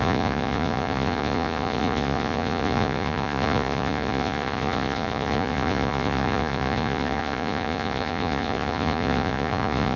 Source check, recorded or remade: remade